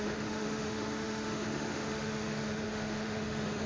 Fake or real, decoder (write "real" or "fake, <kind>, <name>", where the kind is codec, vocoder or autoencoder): fake, autoencoder, DAC-VAE